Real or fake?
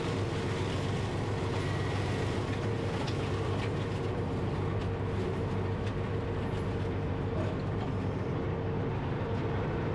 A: real